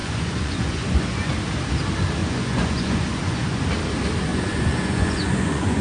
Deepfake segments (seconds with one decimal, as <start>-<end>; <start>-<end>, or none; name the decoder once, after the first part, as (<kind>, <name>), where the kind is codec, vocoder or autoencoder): 0.0-1.3 (vocoder, Vocos); 2.2-3.6; 4.3-5.8